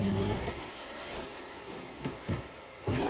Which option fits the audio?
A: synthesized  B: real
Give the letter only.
A